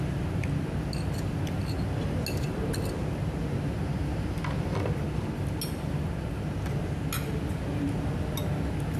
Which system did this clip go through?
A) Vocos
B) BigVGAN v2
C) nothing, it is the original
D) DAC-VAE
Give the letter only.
C